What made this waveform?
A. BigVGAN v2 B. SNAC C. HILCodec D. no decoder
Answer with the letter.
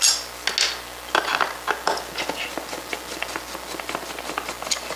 D